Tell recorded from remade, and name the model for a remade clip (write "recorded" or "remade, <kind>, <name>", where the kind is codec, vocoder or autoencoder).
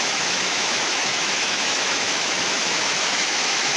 remade, autoencoder, DAC-VAE